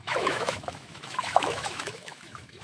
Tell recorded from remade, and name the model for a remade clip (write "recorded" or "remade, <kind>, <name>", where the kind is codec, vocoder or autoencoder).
remade, autoencoder, DAC-VAE